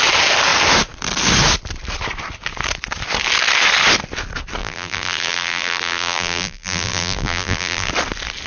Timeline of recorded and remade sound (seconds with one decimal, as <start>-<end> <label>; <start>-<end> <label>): 0.0-4.6 recorded; 4.6-7.9 remade; 7.9-8.5 recorded